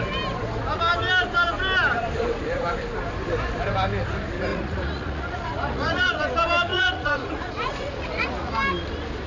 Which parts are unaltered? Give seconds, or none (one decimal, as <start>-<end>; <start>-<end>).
0.0-4.5; 6.2-6.7; 8.5-9.3